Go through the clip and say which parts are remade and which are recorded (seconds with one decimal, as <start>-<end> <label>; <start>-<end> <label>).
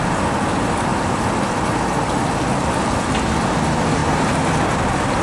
0.0-5.2 recorded